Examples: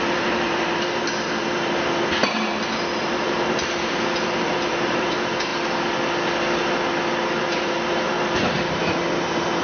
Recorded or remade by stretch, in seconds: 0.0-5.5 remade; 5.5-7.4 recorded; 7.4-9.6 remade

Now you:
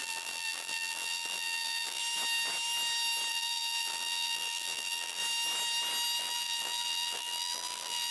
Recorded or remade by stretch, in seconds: 0.0-2.0 remade; 2.0-3.3 recorded; 3.3-5.2 remade; 5.2-6.2 recorded; 6.2-8.1 remade

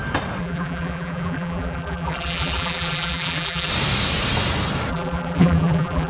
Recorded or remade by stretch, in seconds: 0.0-0.4 recorded; 0.4-3.7 remade; 3.7-4.9 recorded; 4.9-6.1 remade

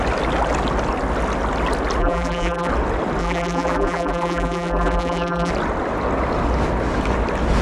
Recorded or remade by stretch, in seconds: 0.0-2.0 recorded; 2.0-2.7 remade; 2.7-3.2 recorded; 3.2-5.5 remade; 5.5-7.6 recorded

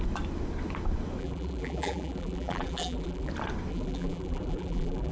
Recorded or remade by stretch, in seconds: 0.0-1.2 recorded; 1.2-3.3 remade; 3.3-3.7 recorded; 3.7-5.1 remade

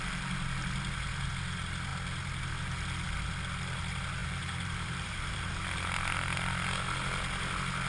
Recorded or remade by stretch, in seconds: 0.0-4.2 recorded; 4.2-5.5 remade; 5.5-7.9 recorded

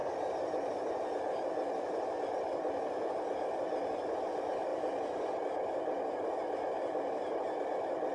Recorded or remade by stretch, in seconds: 0.0-4.7 recorded; 4.7-5.4 remade; 5.4-8.1 recorded